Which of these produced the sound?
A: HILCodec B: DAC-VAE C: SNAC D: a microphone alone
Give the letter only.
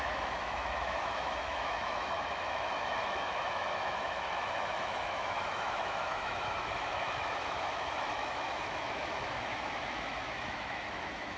B